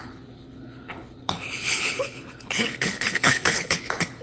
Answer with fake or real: fake